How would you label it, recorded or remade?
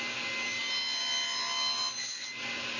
recorded